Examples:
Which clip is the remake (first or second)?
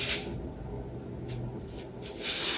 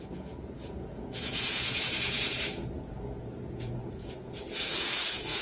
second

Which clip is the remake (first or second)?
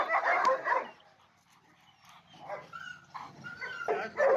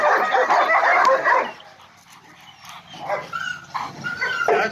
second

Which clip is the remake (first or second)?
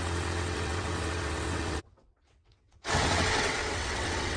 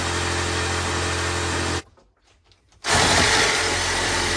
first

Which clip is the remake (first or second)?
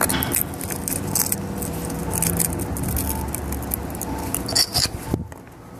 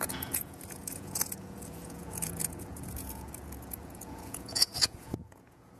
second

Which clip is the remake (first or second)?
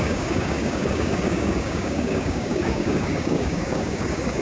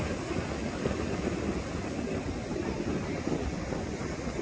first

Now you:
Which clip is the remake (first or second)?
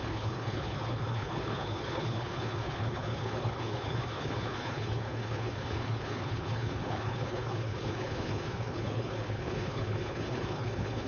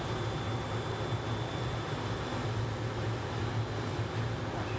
first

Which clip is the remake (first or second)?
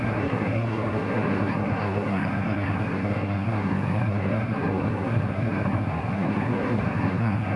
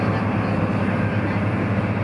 first